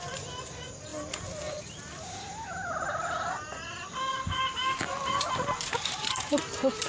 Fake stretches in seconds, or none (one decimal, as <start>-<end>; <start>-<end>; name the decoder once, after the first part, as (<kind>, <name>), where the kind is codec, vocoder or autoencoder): 4.1-6.9 (vocoder, BigVGAN v2)